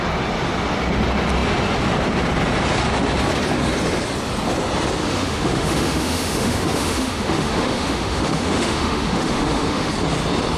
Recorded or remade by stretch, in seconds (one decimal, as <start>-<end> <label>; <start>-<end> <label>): 0.0-5.0 recorded; 5.0-9.9 remade; 9.9-10.6 recorded